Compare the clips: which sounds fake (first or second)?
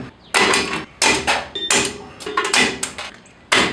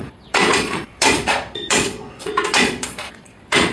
second